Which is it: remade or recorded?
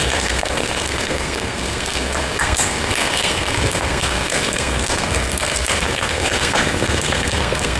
remade